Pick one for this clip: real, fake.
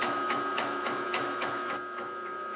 fake